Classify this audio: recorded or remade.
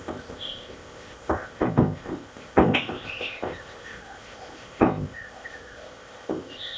remade